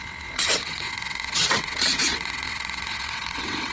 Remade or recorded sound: remade